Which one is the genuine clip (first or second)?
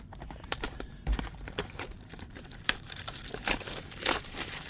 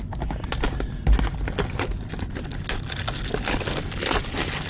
second